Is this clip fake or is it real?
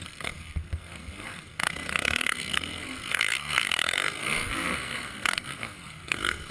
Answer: fake